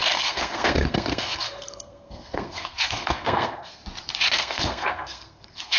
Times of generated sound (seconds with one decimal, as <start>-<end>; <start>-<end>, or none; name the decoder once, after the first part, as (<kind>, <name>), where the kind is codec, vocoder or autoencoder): 0.0-3.8 (codec, SNAC); 4.4-5.8